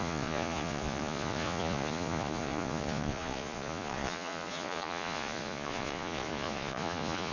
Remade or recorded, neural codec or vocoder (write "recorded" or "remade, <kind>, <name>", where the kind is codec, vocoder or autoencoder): remade, vocoder, Vocos